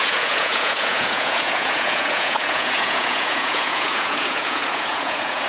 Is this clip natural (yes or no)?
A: no